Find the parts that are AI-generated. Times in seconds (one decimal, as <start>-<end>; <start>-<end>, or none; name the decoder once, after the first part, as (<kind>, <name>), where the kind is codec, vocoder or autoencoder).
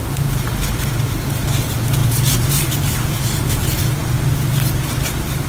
none